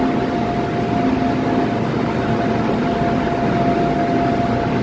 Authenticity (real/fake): real